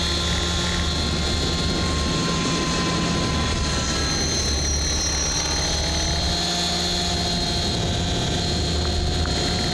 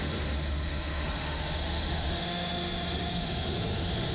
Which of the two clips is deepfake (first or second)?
second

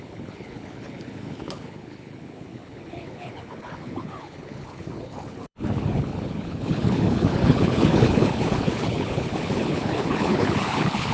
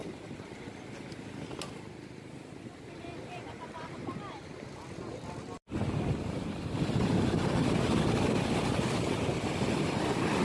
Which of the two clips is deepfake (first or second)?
first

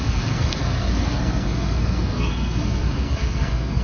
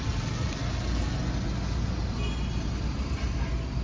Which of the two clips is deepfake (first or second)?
first